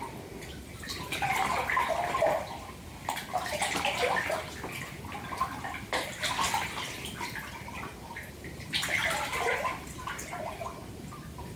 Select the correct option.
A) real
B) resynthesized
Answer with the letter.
A